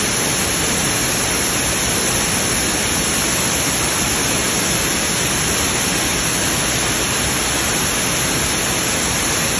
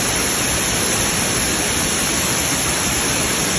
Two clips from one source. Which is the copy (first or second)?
second